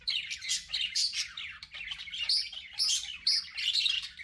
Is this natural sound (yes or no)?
yes